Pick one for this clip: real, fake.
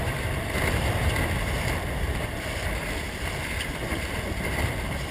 real